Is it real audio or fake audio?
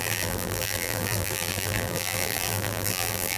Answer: fake